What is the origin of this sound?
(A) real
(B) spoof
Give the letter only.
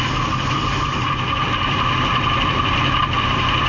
B